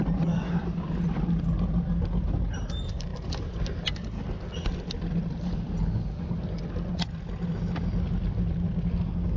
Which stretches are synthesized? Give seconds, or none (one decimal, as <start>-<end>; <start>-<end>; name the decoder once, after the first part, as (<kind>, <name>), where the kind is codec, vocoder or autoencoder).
none